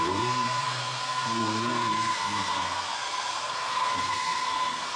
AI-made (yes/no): yes